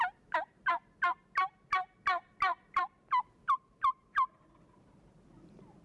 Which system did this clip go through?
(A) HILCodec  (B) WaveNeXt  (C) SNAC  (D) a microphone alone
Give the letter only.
D